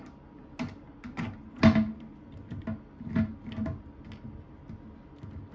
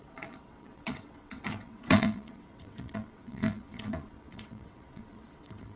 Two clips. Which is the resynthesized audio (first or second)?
second